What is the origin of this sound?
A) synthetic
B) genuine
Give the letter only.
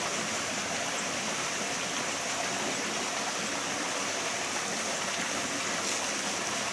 B